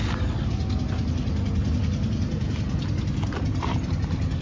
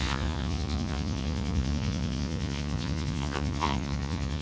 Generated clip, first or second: second